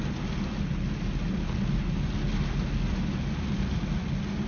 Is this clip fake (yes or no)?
no